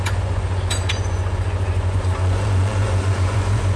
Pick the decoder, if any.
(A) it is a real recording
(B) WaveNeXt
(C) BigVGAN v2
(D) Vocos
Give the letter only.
D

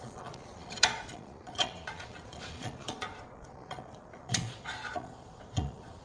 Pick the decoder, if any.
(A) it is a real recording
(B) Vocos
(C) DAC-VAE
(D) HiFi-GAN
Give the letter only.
B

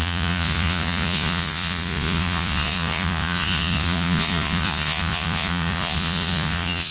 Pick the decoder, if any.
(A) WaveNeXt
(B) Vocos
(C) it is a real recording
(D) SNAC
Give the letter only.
B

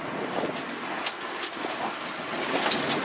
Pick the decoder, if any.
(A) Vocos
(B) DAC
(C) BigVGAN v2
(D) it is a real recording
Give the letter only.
D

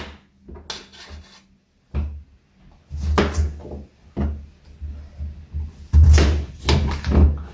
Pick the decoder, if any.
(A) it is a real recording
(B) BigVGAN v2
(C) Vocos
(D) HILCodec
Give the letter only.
A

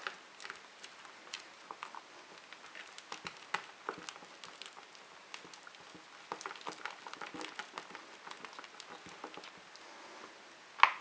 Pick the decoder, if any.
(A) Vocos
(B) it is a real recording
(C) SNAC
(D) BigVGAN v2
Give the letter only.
B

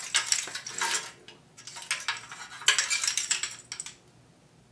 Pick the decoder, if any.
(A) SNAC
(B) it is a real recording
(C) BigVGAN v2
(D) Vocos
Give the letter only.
B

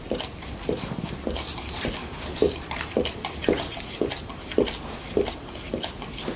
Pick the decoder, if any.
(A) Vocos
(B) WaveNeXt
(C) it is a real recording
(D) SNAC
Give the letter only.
C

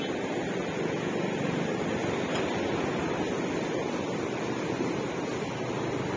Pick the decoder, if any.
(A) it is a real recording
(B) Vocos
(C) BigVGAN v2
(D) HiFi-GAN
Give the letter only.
A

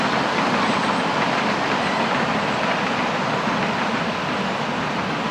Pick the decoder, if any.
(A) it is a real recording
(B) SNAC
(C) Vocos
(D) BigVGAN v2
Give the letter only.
A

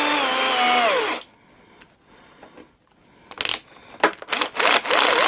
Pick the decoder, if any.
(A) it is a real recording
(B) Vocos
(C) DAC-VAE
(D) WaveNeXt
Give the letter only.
A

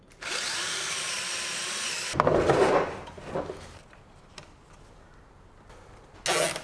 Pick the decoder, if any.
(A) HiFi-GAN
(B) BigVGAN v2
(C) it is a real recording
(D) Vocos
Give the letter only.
C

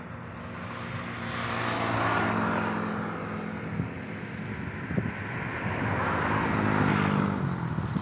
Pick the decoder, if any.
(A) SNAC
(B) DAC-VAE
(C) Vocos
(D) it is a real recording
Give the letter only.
D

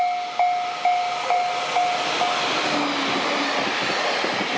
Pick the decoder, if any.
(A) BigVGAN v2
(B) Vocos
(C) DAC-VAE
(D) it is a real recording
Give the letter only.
D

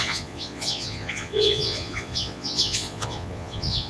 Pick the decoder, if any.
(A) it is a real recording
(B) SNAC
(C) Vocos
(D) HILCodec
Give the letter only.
C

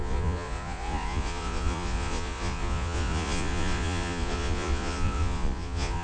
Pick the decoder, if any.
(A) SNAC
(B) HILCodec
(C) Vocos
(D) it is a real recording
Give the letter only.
C